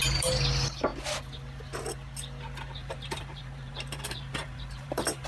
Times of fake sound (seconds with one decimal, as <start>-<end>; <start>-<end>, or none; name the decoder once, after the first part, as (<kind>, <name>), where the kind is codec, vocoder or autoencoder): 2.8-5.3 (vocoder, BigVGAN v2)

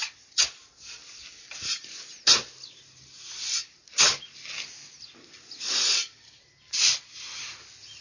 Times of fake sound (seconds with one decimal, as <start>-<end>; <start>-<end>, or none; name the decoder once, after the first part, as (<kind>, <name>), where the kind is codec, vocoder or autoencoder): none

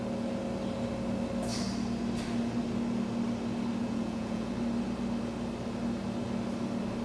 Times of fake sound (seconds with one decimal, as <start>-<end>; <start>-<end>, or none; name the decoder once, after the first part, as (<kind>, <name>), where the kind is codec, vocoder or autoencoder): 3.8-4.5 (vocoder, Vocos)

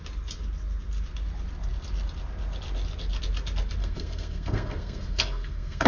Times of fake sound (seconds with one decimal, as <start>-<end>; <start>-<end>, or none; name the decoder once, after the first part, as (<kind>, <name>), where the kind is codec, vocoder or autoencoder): 3.8-5.9 (codec, SNAC)

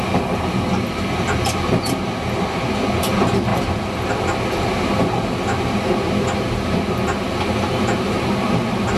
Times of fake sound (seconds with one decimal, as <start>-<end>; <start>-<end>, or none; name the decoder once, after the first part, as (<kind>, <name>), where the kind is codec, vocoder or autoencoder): 3.5-4.1 (vocoder, BigVGAN v2)

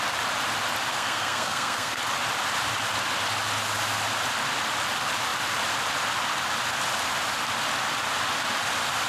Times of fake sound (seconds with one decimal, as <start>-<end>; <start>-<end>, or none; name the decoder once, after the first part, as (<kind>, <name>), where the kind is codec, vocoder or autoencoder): 0.9-2.0 (codec, SNAC)